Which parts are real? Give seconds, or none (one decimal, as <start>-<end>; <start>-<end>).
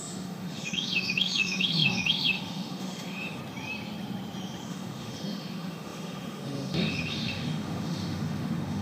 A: 3.4-4.7